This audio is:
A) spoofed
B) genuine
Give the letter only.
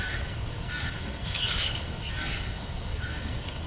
A